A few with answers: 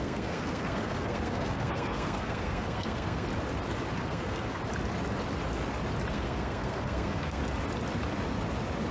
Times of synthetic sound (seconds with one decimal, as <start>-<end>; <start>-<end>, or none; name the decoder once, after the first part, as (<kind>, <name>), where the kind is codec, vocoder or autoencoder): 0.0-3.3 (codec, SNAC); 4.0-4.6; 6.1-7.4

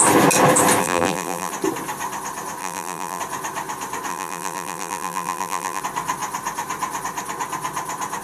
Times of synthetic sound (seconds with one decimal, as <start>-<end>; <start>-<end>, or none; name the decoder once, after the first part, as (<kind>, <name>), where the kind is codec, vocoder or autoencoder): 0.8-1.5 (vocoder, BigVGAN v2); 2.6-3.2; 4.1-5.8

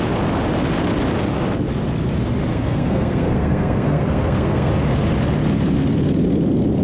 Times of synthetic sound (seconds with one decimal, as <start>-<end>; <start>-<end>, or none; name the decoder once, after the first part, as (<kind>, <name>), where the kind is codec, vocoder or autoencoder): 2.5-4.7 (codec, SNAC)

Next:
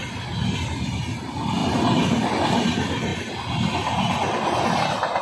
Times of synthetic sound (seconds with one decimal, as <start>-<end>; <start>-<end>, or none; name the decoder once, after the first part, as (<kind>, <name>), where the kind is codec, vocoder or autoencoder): none

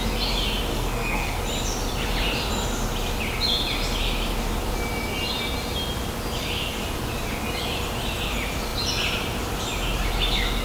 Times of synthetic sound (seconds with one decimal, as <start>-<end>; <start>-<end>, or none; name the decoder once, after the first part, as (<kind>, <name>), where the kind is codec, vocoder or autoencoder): 0.7-1.4 (codec, SNAC)

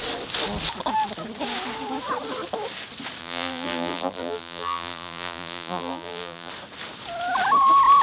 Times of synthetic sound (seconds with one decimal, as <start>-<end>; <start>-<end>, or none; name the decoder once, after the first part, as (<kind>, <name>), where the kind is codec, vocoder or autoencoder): 3.2-6.5 (vocoder, BigVGAN v2)

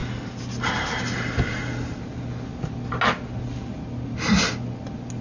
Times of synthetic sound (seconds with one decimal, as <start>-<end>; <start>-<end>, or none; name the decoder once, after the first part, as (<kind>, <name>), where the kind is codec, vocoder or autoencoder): none

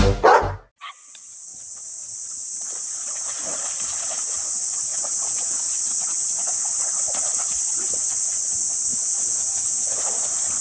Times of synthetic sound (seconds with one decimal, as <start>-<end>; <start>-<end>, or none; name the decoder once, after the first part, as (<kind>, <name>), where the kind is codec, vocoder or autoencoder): 4.9-5.6 (vocoder, Vocos); 8.9-10.0